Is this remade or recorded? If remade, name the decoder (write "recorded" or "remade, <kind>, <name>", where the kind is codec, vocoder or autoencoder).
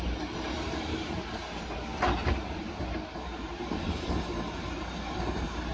remade, vocoder, BigVGAN v2